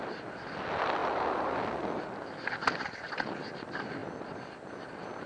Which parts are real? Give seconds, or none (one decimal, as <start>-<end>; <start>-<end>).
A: 0.0-5.3